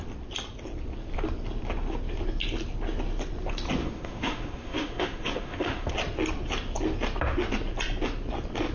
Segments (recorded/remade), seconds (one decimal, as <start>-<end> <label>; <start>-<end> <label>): 0.0-3.8 recorded; 3.8-5.9 remade; 5.9-8.7 recorded